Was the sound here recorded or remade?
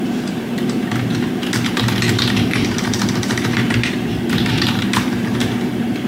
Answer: remade